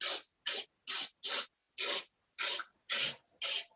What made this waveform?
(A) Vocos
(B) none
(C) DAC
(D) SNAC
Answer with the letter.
B